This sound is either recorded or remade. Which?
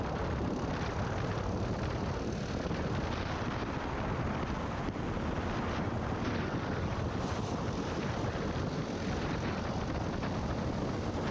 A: recorded